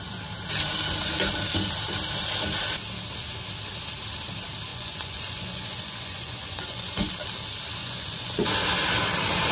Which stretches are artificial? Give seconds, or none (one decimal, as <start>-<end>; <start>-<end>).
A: 4.7-7.1; 7.8-8.5